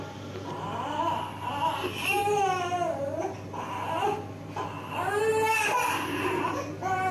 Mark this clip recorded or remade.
remade